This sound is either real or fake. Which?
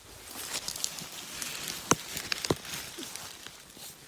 real